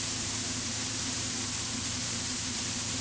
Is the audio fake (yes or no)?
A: yes